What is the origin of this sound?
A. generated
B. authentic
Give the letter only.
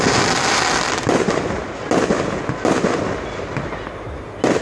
B